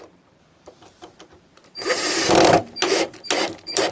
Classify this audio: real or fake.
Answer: fake